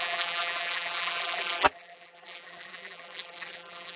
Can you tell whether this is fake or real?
fake